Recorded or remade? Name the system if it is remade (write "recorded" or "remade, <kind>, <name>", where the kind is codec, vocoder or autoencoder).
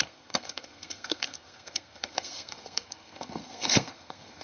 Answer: remade, codec, SNAC